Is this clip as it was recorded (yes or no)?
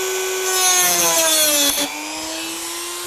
yes